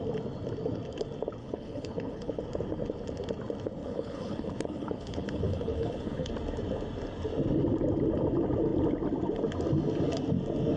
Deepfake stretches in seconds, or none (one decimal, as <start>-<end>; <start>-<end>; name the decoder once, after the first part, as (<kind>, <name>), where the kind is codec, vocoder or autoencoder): 1.4-2.4 (codec, HILCodec); 3.8-6.3